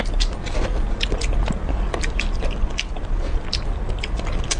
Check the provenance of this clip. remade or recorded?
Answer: recorded